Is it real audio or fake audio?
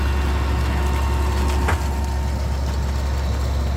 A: real